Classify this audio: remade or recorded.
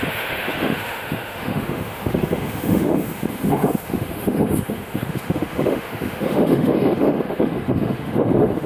remade